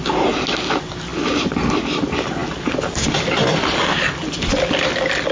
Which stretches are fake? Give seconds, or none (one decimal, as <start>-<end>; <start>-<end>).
none